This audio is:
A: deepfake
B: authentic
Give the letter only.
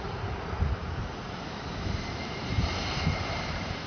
A